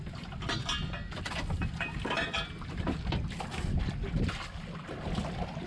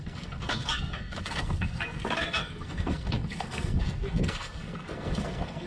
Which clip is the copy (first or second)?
second